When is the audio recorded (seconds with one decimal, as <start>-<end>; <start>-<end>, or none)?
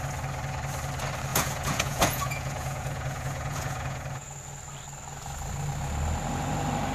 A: 0.0-1.3; 4.4-6.9